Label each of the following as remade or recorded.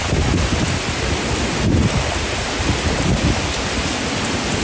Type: recorded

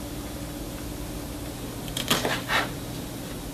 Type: recorded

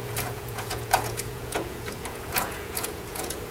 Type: remade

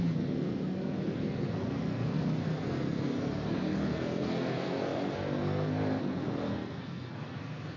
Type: remade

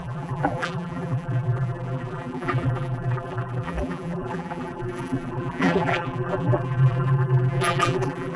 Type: remade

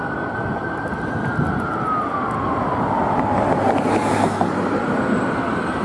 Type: recorded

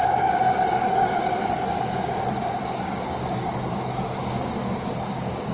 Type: remade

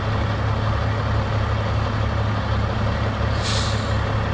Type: recorded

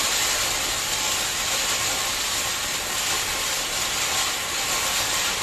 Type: remade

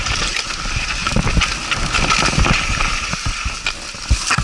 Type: recorded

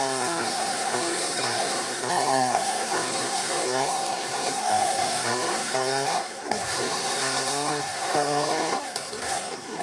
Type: remade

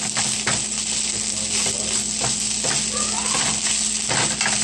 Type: recorded